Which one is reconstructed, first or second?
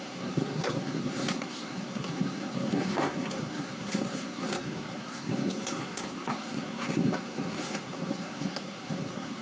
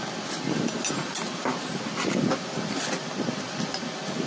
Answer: first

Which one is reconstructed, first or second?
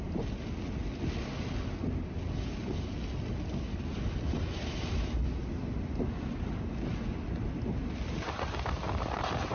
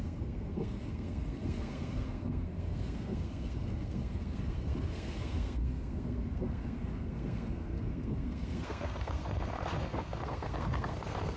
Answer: second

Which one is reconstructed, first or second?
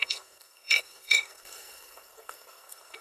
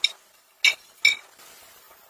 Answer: first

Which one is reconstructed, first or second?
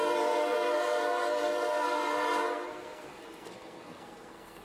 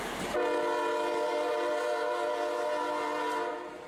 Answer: first